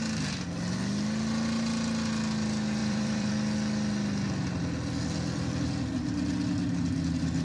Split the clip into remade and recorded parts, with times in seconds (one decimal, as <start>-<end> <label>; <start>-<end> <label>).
0.0-2.8 recorded; 2.8-3.3 remade; 3.3-7.4 recorded